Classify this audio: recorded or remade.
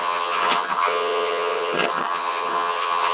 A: remade